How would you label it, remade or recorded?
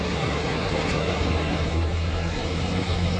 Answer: remade